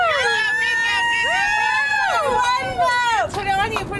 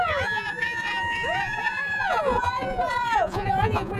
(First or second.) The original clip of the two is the first